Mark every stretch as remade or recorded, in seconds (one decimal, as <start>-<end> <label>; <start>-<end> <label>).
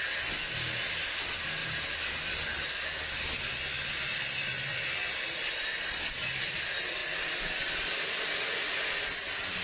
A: 0.0-1.6 remade; 1.6-2.2 recorded; 2.2-7.0 remade; 7.0-8.3 recorded; 8.3-9.6 remade